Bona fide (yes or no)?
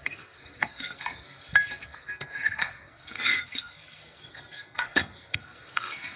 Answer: no